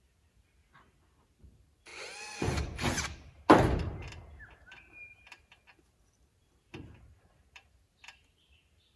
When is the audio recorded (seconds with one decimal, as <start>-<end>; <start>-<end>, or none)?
0.0-1.9; 3.0-9.0